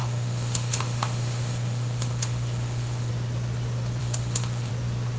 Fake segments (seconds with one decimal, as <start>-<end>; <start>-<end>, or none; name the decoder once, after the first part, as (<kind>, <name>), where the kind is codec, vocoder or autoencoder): 0.0-3.1 (autoencoder, DAC-VAE); 4.0-4.7